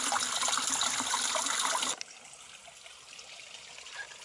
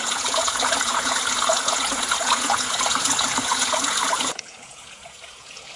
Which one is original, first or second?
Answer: first